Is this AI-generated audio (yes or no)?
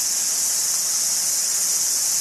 no